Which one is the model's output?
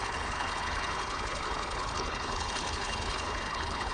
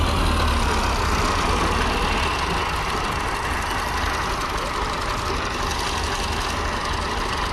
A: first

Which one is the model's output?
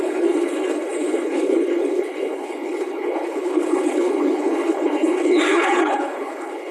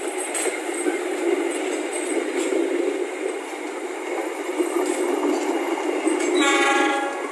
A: first